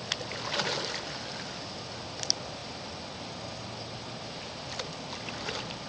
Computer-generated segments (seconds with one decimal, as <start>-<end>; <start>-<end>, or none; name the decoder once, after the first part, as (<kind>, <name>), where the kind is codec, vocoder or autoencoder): none